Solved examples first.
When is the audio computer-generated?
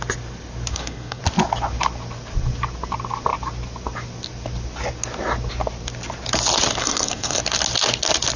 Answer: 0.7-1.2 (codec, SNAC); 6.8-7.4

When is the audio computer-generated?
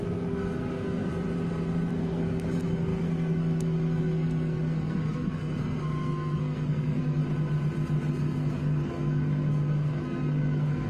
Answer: 0.0-1.1 (codec, SNAC); 1.9-7.2; 8.1-10.9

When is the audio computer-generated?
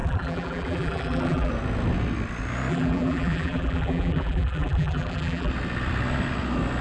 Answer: 0.0-1.5 (vocoder, BigVGAN v2); 2.7-5.5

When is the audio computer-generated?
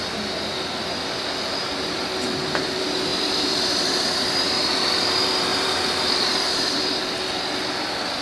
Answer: 3.1-4.7 (vocoder, BigVGAN v2); 5.5-7.0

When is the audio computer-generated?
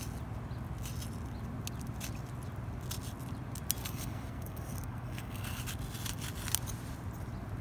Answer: 3.8-5.6 (codec, SNAC)